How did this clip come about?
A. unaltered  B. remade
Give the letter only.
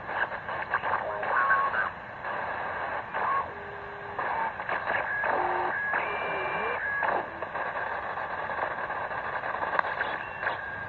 A